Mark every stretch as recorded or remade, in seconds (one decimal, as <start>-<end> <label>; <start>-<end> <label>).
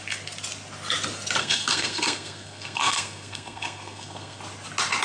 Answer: 0.0-1.4 recorded; 1.4-4.4 remade; 4.4-5.0 recorded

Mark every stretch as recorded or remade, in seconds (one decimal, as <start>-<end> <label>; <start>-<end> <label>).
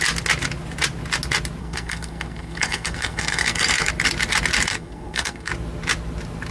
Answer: 0.0-1.6 recorded; 1.6-3.9 remade; 3.9-4.7 recorded; 4.7-5.5 remade; 5.5-6.5 recorded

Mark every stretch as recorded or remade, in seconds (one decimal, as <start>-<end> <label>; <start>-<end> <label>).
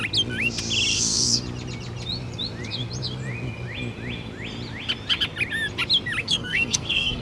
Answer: 0.0-0.9 recorded; 0.9-1.4 remade; 1.4-6.2 recorded; 6.2-7.2 remade